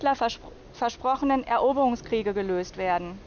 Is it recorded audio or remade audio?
recorded